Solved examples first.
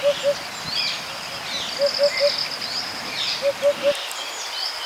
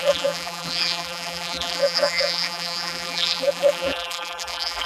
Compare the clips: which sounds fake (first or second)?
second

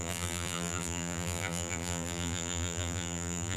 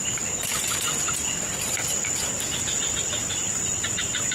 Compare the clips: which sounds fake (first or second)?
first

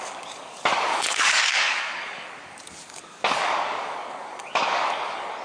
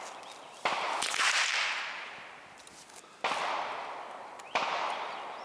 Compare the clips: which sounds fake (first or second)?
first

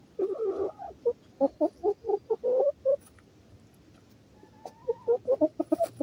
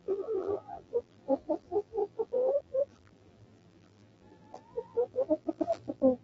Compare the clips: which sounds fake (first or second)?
second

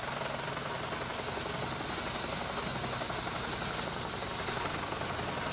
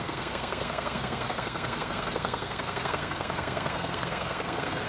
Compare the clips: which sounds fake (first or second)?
second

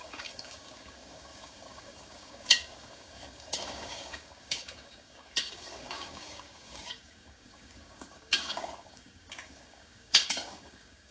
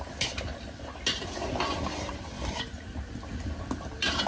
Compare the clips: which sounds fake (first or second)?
first